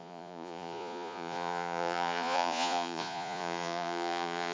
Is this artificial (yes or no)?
yes